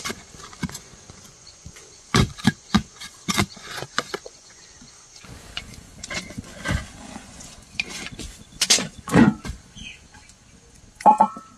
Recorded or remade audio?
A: remade